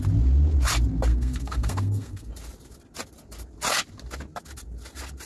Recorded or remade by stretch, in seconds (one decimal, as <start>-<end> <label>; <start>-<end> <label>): 0.0-1.1 recorded; 1.1-2.3 remade; 2.3-5.3 recorded